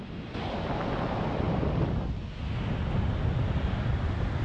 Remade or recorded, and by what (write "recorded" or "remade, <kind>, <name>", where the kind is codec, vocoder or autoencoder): recorded